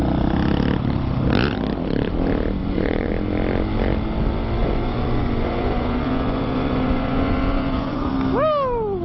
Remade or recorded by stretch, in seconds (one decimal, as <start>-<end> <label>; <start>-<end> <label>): 0.0-2.6 recorded; 2.6-3.1 remade; 3.1-4.6 recorded; 4.6-8.1 remade; 8.1-9.0 recorded